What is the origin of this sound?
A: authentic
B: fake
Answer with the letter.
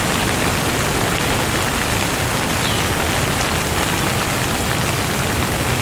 A